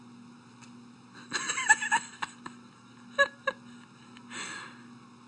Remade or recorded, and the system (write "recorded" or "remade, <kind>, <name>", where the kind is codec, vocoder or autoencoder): recorded